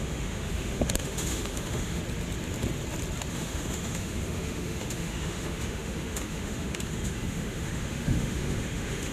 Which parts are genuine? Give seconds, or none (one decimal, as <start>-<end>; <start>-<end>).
2.0-3.3